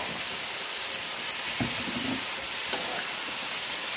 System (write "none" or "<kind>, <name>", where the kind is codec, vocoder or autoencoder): none